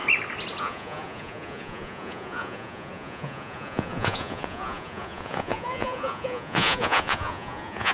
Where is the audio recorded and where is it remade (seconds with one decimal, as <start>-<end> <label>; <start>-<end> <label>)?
0.0-0.6 recorded; 0.6-7.9 remade